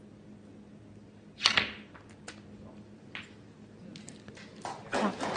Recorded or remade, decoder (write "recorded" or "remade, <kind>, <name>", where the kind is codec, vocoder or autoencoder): recorded